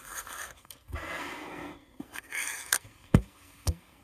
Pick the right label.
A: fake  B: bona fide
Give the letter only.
A